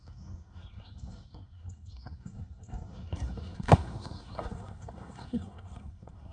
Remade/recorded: remade